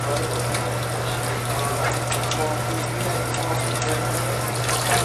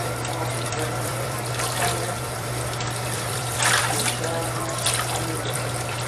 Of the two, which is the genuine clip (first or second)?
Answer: first